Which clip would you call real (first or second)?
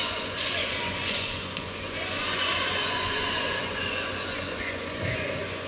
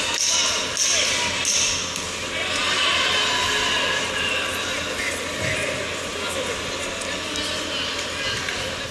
second